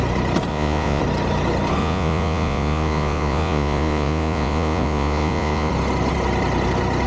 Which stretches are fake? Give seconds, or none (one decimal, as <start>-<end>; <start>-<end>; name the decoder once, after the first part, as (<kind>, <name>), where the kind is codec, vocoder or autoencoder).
0.5-1.0 (vocoder, Vocos); 1.8-5.7